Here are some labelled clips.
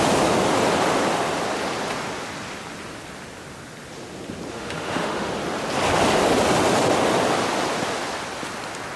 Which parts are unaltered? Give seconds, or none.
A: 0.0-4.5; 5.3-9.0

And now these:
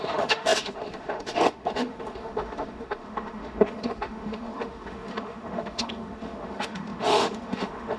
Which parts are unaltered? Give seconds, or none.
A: none

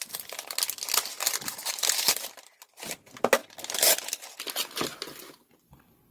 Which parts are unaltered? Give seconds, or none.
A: 0.0-6.1

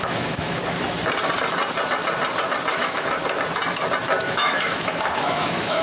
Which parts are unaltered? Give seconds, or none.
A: 0.6-2.7; 3.2-4.2

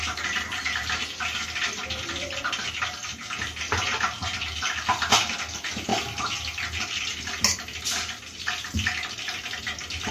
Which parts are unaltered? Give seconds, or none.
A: 0.0-10.1

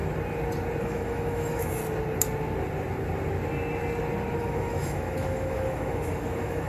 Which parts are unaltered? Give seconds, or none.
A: 0.0-0.8; 1.8-4.4